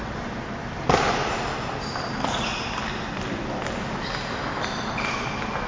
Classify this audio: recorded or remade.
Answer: recorded